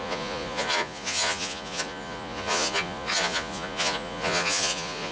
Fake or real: fake